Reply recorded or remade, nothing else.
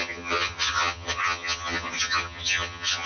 remade